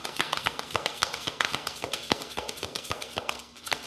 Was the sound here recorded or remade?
remade